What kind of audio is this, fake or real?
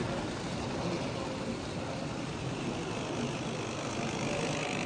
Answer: real